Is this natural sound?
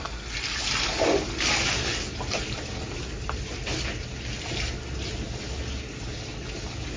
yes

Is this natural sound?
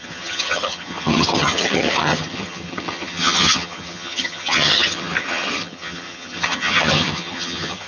no